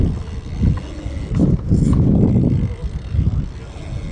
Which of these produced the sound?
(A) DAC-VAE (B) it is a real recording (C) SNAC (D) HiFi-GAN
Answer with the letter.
B